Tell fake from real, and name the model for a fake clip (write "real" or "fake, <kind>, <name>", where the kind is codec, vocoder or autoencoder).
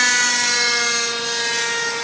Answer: real